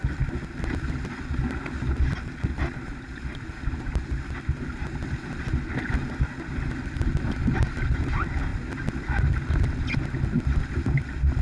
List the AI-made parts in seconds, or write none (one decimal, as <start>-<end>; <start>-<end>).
none